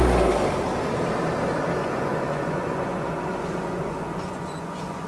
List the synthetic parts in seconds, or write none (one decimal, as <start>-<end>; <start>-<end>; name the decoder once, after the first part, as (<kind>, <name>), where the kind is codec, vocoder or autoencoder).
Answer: 1.8-5.1 (vocoder, Vocos)